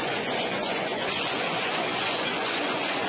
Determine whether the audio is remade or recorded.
remade